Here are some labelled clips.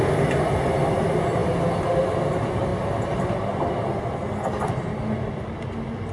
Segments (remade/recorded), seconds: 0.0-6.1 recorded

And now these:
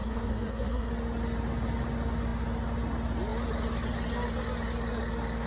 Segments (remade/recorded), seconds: 0.0-0.9 remade; 0.9-5.5 recorded

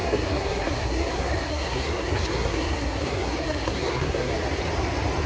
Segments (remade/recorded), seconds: 0.0-4.3 remade; 4.3-5.3 recorded

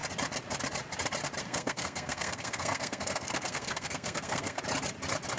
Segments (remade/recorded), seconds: 0.0-1.4 recorded; 1.4-4.6 remade; 4.6-5.4 recorded

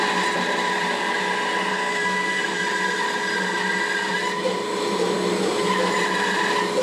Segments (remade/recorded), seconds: 0.0-1.7 recorded; 1.7-2.4 remade; 2.4-6.8 recorded

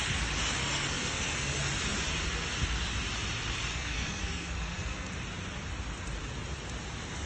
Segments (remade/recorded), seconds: 0.0-0.6 recorded; 0.6-1.6 remade; 1.6-3.7 recorded; 3.7-5.1 remade; 5.1-7.3 recorded